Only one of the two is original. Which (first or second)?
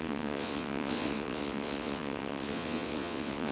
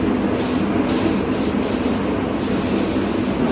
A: second